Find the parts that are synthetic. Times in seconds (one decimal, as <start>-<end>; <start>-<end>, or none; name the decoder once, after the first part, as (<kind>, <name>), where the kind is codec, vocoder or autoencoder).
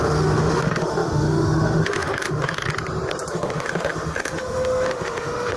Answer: 0.0-2.6 (autoencoder, DAC-VAE); 3.3-5.6